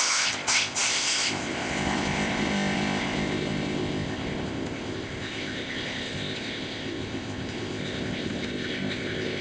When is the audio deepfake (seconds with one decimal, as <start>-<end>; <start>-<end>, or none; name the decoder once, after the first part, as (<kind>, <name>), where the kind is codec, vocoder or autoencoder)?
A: 0.0-9.4 (codec, ZipCodec)